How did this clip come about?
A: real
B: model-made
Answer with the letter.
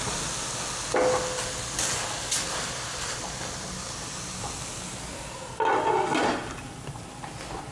A